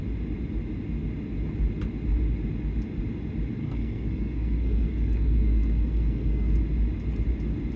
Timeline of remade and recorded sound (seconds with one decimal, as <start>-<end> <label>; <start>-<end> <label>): 0.0-3.6 recorded; 3.6-6.6 remade; 6.6-7.8 recorded

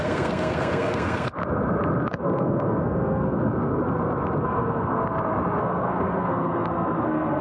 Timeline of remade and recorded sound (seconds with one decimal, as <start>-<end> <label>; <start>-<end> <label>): 0.0-1.4 remade; 1.4-2.2 recorded; 2.2-3.8 remade; 3.8-4.4 recorded; 4.4-5.0 remade; 5.0-5.6 recorded; 5.6-7.4 remade

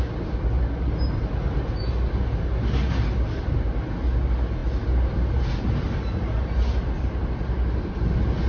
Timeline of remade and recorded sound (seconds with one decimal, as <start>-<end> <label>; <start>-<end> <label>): 0.0-8.5 recorded

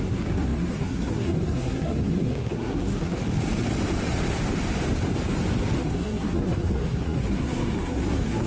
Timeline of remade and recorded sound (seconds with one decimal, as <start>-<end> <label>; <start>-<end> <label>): 0.0-3.2 remade; 3.2-5.8 recorded; 5.8-8.5 remade

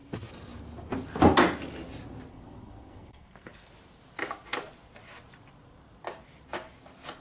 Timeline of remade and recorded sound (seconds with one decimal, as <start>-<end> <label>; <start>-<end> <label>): 0.0-2.3 recorded; 2.3-3.7 remade; 3.7-7.2 recorded